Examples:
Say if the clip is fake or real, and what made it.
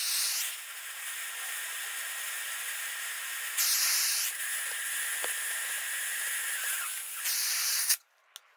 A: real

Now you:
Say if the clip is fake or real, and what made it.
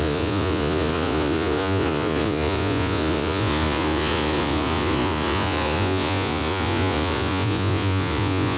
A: fake, vocoder, Vocos